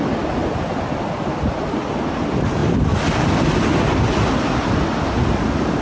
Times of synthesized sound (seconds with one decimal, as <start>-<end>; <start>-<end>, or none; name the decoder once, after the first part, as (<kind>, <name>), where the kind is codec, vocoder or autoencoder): none